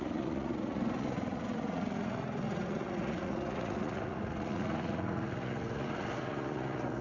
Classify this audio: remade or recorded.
remade